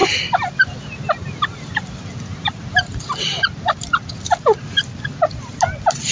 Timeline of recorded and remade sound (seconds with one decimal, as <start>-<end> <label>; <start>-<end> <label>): 0.0-0.8 remade; 0.8-6.1 recorded